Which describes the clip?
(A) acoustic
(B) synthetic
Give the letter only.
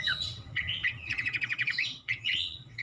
B